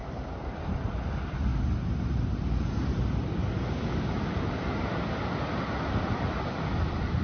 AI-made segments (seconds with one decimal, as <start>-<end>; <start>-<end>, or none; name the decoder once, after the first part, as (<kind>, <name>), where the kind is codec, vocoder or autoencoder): 1.1-1.5 (vocoder, BigVGAN v2); 5.8-7.2